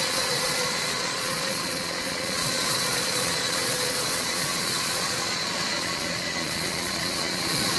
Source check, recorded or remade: remade